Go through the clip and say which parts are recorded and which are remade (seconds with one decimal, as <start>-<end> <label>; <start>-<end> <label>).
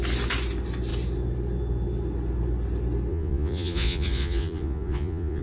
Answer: 0.0-3.1 recorded; 3.1-5.4 remade